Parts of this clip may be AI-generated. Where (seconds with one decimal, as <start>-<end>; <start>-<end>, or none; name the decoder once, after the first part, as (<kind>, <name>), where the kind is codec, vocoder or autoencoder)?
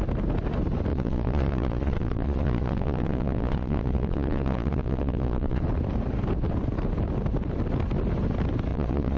0.9-5.6 (vocoder, Vocos); 8.7-9.2